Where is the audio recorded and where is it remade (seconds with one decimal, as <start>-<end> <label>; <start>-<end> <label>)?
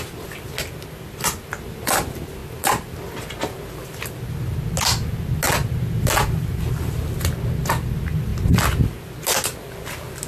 0.0-10.3 recorded